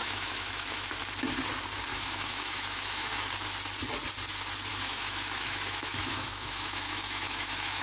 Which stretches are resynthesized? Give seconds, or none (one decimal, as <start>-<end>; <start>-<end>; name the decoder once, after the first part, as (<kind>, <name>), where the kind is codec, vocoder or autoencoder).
0.0-0.9 (autoencoder, DAC-VAE); 1.9-3.1; 4.7-7.8